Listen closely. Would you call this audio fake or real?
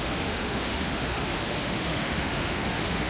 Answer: fake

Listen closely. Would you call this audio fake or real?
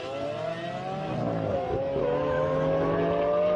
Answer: real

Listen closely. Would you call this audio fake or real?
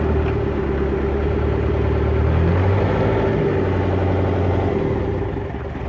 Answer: real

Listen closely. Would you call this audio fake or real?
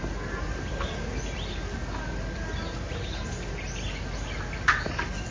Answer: real